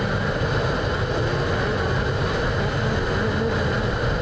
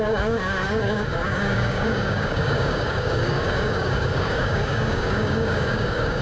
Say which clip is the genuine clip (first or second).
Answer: first